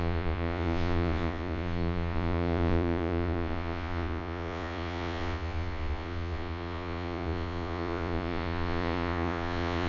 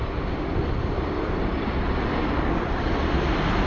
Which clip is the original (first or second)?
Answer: second